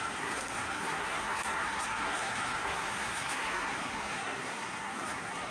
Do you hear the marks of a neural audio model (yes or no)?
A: yes